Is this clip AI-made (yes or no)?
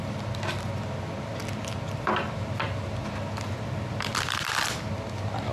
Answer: no